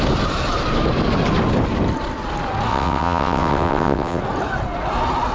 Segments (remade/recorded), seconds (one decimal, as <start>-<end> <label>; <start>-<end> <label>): 0.0-2.7 recorded; 2.7-4.2 remade; 4.2-5.3 recorded